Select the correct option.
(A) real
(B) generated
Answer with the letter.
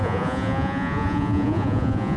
B